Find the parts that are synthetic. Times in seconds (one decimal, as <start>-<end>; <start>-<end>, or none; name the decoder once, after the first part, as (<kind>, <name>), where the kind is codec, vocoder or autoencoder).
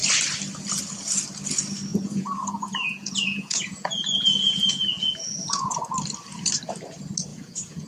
1.9-5.8 (vocoder, Vocos); 7.3-7.9